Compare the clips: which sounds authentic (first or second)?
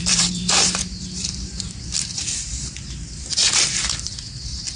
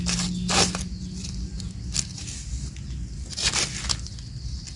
second